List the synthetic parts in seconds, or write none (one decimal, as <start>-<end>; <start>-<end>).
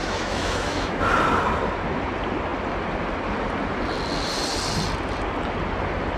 0.0-1.0